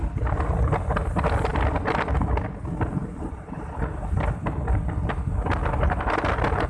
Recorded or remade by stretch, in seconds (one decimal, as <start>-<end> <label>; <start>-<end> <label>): 0.0-6.7 recorded